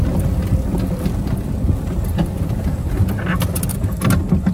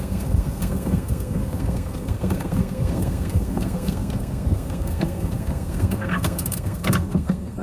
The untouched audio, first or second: first